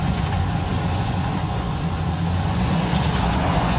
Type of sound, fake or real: fake